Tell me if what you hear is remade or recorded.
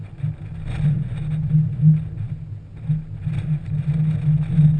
recorded